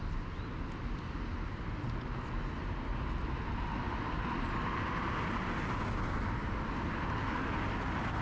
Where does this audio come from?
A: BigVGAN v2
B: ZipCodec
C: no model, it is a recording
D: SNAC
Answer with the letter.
C